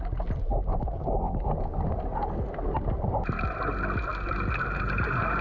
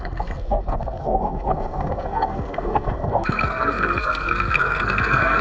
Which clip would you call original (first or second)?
first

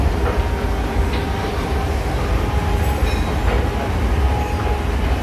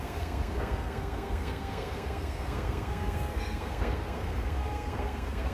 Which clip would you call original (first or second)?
first